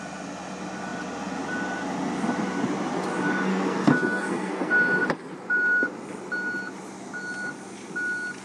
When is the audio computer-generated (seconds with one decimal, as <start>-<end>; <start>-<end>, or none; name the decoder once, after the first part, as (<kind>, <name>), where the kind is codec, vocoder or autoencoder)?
3.5-4.7 (codec, SNAC)